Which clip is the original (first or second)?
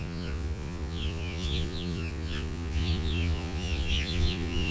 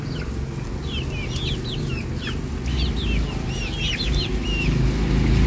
second